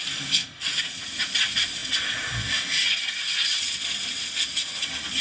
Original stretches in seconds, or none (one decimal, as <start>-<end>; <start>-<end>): 0.0-0.4; 1.3-5.2